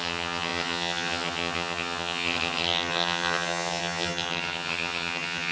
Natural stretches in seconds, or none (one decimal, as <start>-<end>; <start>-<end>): none